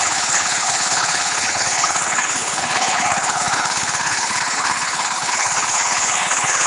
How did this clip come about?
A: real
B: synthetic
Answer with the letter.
B